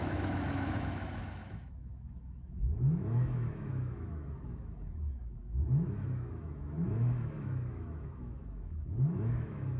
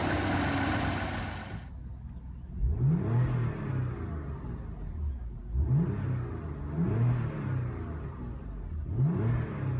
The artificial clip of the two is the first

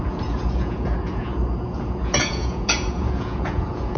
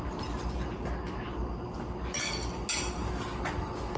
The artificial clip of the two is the first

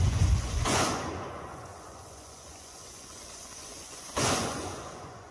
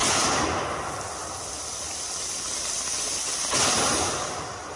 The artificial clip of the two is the first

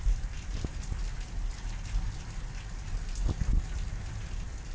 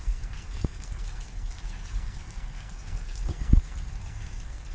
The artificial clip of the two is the second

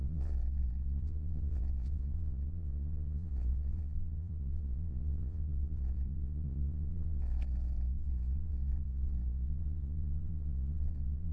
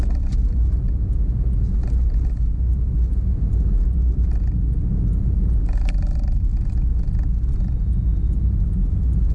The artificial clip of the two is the first